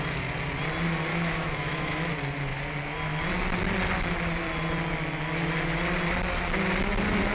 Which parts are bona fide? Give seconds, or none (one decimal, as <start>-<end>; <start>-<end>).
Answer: 0.0-1.1; 2.1-7.3

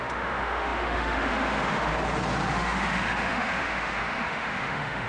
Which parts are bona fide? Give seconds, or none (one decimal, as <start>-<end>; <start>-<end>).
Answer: 1.9-2.5

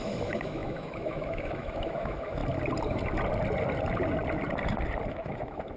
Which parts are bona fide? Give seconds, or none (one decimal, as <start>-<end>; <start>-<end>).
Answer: 2.4-5.1

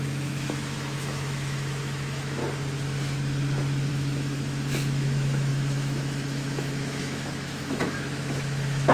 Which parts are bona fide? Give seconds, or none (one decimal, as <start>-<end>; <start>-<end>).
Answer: 2.4-3.9

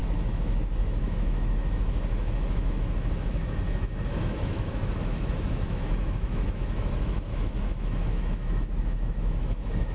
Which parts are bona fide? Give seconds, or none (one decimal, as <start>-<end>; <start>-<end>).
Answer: none